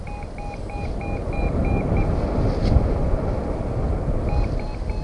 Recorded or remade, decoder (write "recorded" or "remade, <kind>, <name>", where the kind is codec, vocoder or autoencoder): recorded